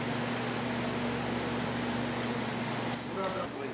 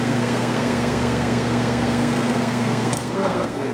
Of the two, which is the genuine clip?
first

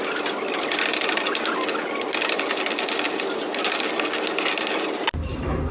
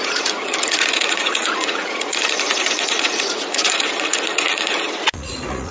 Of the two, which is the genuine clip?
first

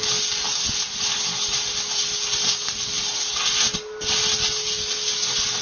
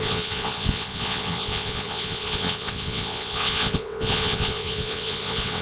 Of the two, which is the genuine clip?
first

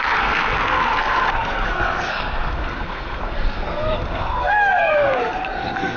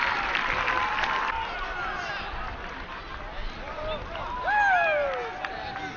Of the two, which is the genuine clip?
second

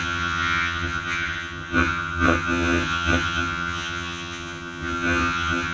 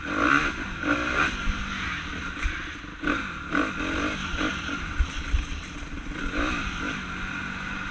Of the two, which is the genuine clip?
second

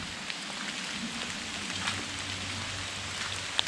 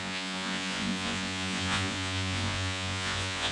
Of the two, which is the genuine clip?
first